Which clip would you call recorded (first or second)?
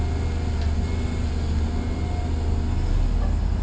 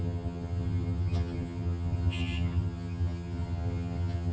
first